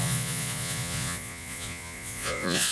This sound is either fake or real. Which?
fake